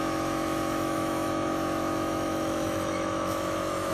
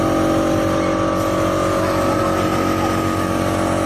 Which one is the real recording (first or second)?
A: second